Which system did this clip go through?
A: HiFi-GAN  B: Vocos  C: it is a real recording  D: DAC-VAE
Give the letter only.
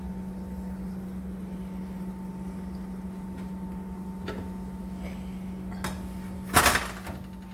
C